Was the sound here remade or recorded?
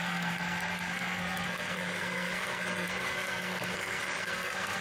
remade